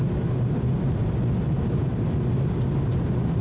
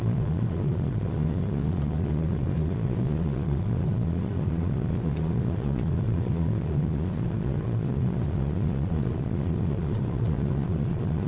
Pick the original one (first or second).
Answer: first